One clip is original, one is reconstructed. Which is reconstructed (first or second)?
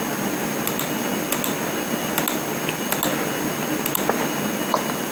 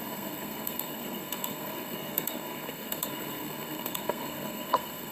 second